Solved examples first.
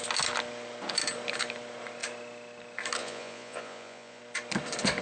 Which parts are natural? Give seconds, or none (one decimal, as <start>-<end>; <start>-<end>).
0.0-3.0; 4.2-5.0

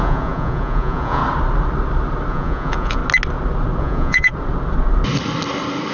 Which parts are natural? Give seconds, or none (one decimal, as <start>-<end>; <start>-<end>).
1.2-2.3; 3.0-3.8; 4.3-5.9

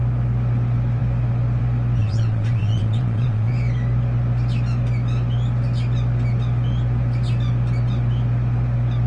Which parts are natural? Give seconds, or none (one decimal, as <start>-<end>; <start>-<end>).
0.0-2.0; 3.5-9.1

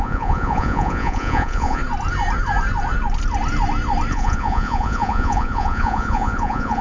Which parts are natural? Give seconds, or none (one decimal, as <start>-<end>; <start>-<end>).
1.8-4.1